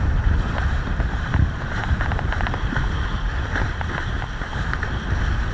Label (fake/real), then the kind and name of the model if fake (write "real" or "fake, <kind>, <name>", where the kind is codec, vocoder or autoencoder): real